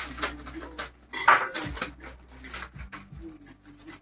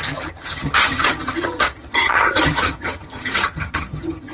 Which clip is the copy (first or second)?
second